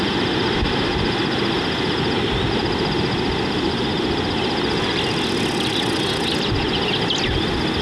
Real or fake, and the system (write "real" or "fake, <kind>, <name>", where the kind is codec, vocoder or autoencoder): real